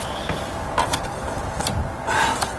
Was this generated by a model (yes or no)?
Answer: no